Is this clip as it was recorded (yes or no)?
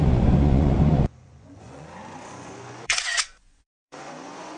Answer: no